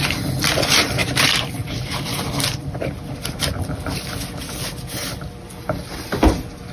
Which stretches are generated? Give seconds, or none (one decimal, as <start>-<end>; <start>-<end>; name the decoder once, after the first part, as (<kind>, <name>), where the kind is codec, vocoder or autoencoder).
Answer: 1.0-4.8 (vocoder, BigVGAN v2)